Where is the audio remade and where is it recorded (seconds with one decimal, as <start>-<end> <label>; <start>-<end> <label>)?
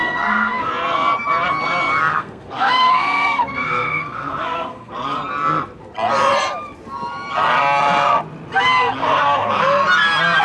0.0-0.7 remade; 0.7-2.1 recorded; 2.1-4.9 remade; 4.9-9.0 recorded; 9.0-9.6 remade; 9.6-10.4 recorded